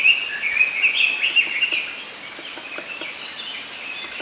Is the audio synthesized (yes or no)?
no